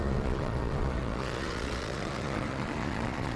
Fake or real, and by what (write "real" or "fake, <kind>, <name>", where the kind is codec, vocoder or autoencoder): fake, vocoder, Vocos